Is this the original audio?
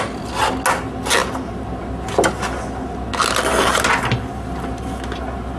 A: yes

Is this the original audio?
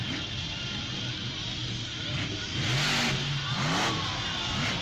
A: yes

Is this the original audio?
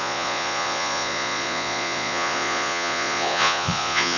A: no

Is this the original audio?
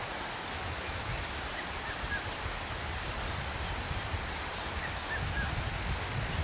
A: yes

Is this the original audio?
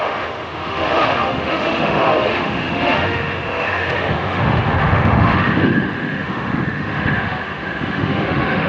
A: no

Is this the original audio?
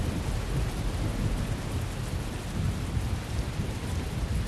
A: yes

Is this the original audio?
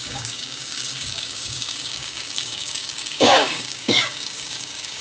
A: no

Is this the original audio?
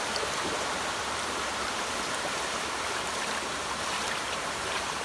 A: no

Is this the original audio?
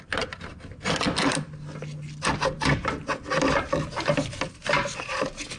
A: yes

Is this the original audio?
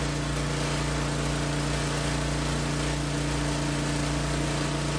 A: yes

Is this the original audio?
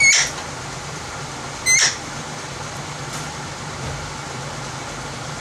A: yes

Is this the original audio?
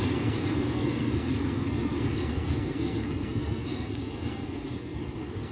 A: no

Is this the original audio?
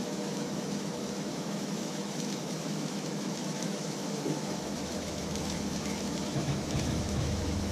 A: no